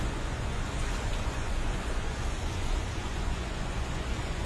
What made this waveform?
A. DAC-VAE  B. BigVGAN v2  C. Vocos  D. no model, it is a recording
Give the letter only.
C